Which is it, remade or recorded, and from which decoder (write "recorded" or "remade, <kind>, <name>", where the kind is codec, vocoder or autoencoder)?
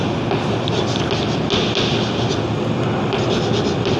recorded